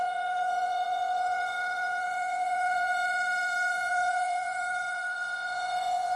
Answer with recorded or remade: remade